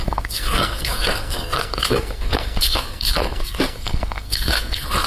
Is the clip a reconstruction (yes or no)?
yes